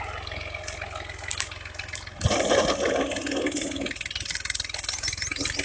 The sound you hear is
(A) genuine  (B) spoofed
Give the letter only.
A